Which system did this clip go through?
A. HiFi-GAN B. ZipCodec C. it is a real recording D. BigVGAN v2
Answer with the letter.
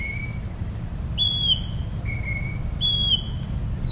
C